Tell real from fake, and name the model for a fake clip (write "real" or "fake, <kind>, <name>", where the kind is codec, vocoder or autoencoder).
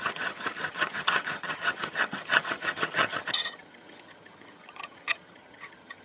fake, vocoder, HiFi-GAN